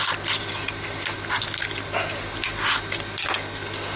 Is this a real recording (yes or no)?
yes